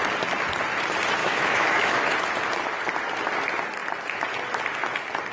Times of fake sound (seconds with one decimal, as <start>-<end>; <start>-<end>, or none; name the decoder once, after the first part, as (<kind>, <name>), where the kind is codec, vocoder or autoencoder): 1.2-2.0 (autoencoder, DAC-VAE)

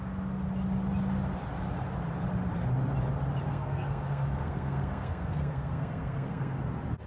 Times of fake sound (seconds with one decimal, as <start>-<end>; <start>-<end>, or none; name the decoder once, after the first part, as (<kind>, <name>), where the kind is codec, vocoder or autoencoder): 3.5-6.6 (codec, SNAC)

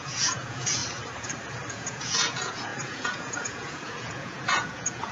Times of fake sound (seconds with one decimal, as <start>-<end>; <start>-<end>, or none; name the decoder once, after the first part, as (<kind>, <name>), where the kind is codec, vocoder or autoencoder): 0.0-0.8 (vocoder, Vocos); 1.7-5.1

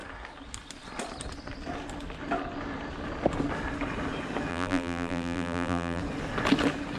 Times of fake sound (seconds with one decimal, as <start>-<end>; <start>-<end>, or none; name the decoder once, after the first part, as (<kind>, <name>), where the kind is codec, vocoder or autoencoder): 4.5-6.0 (vocoder, BigVGAN v2)